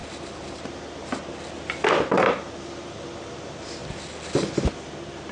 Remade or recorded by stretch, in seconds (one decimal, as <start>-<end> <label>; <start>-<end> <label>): 0.0-5.3 recorded